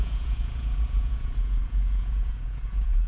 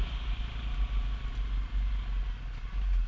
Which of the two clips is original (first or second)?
second